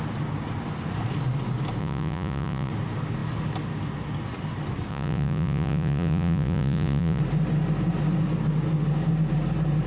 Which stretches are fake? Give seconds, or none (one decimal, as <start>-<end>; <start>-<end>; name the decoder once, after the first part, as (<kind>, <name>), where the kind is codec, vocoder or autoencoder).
1.8-2.7 (vocoder, Vocos); 4.9-7.2